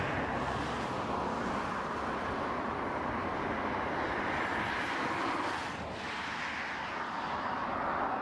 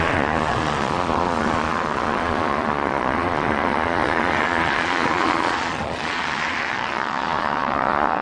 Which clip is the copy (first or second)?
second